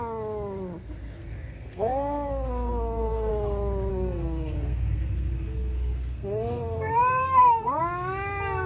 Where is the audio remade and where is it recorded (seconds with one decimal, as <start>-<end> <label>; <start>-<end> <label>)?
0.0-1.2 recorded; 1.2-3.3 remade; 3.3-3.9 recorded; 3.9-7.8 remade; 7.8-8.7 recorded